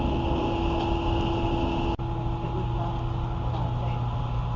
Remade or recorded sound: recorded